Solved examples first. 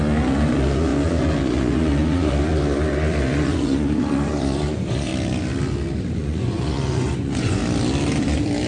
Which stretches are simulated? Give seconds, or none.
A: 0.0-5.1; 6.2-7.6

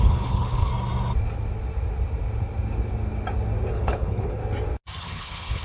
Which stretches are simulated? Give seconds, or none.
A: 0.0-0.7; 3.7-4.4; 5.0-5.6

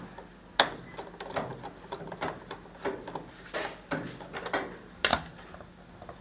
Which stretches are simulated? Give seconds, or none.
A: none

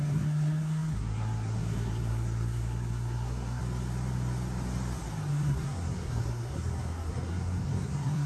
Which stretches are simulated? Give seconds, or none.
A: 0.0-3.6; 5.3-8.3

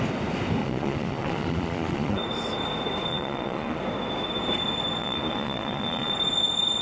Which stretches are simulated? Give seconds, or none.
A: 0.6-2.2; 3.1-3.8; 5.0-6.1